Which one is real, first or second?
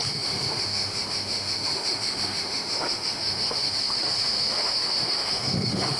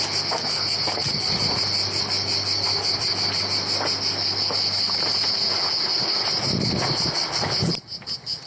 second